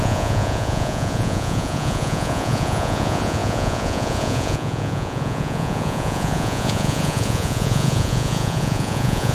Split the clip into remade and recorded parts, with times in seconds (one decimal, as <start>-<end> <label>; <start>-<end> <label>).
0.0-9.3 remade

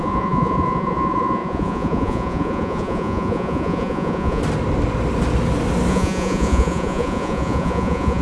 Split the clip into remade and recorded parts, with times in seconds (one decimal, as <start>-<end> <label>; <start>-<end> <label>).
0.0-4.4 remade; 4.4-5.9 recorded; 5.9-8.2 remade

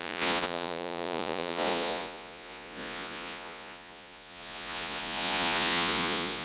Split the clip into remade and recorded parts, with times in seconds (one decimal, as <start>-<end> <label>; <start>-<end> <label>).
0.0-6.4 remade